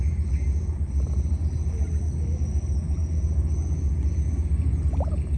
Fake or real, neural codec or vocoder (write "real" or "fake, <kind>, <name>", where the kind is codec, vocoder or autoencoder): real